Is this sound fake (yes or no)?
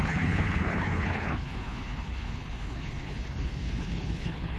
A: yes